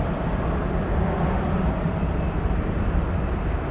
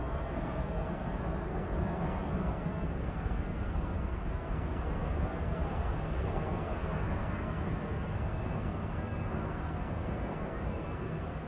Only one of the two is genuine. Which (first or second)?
first